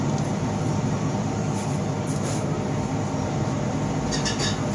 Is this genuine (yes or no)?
yes